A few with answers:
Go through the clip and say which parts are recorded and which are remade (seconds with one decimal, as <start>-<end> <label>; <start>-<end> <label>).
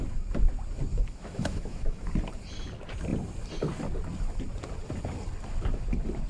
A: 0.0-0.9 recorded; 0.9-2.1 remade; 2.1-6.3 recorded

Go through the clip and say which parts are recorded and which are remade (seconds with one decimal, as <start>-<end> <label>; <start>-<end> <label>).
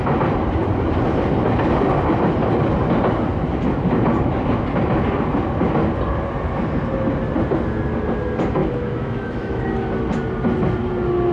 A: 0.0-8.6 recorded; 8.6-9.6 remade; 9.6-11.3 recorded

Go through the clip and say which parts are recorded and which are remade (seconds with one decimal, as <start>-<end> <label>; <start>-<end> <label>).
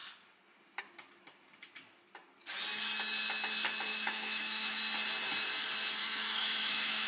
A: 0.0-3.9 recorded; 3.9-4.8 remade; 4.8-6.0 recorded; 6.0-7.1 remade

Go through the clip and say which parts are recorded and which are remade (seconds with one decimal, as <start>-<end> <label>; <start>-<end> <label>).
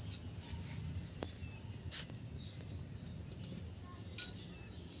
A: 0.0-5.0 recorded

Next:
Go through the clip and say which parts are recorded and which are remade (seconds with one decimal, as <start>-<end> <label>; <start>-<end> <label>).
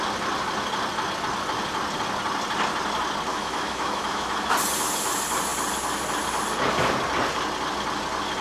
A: 0.0-3.3 recorded; 3.3-4.5 remade; 4.5-8.4 recorded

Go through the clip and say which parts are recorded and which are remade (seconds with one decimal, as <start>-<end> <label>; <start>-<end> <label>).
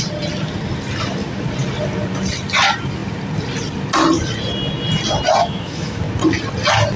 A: 0.0-5.4 recorded; 5.4-6.0 remade; 6.0-7.0 recorded